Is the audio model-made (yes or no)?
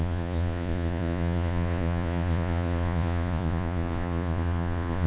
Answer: yes